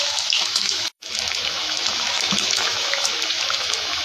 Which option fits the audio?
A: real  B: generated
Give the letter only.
B